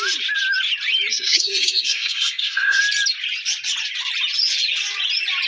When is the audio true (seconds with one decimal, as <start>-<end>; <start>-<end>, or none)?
0.0-1.1; 2.8-5.5